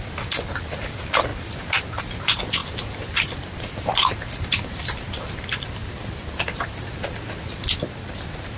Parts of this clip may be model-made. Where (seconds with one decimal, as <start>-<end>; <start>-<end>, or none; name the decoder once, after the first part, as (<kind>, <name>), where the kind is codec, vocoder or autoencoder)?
none